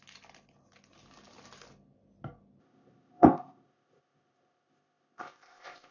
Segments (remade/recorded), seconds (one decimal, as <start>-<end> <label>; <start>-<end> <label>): 0.0-2.6 recorded; 2.6-5.9 remade